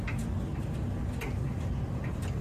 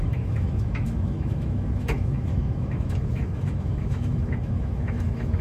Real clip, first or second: first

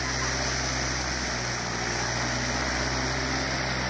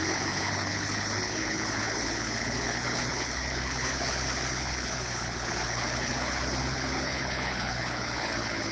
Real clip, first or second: first